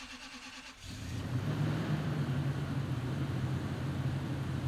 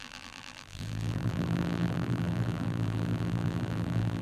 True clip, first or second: first